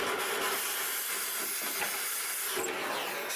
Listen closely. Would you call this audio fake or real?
real